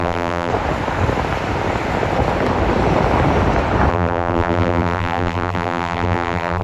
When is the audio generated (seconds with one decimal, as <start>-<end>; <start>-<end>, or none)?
0.0-0.5; 3.9-6.6